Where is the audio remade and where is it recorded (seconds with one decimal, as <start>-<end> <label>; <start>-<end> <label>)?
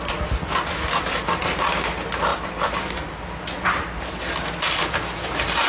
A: 0.0-5.7 recorded